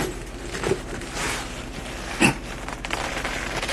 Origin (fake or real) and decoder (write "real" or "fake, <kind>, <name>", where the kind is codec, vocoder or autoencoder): fake, vocoder, BigVGAN v2